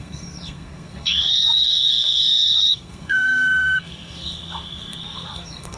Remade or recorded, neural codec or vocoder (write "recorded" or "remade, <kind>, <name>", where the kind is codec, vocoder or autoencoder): remade, codec, SNAC